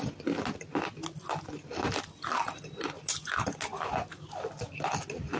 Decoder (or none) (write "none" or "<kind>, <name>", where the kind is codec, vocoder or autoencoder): none